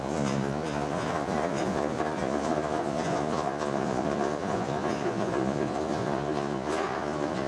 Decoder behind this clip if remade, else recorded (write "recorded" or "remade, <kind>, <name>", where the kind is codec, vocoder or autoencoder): remade, vocoder, Vocos